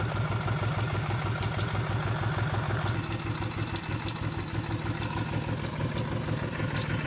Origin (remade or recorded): recorded